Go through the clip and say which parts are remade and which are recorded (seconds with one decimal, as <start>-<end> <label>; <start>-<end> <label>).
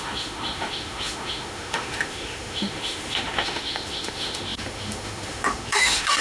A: 0.0-6.2 remade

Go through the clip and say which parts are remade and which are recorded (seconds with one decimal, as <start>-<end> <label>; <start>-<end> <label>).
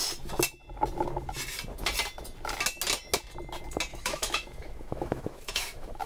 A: 0.0-3.9 recorded; 3.9-6.1 remade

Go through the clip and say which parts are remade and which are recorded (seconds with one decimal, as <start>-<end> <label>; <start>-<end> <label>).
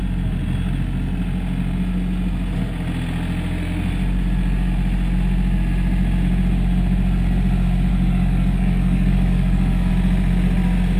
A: 0.0-7.9 recorded; 7.9-9.9 remade; 9.9-11.0 recorded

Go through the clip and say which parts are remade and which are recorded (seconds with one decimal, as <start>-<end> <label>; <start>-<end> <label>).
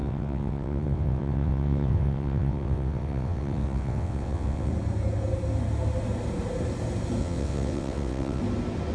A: 0.0-4.7 remade; 4.7-7.2 recorded; 7.2-8.4 remade; 8.4-8.9 recorded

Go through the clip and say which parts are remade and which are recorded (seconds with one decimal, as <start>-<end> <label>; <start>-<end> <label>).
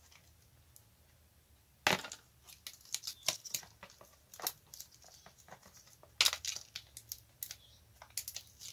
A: 0.0-8.7 recorded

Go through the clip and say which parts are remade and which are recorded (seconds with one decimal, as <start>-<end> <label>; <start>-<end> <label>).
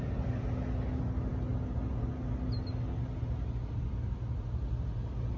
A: 0.0-5.4 recorded